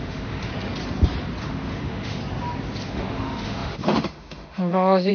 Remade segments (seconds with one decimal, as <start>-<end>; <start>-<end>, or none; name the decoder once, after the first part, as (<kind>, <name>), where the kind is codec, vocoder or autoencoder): 0.0-0.5 (autoencoder, DAC-VAE); 1.4-2.2; 2.9-5.1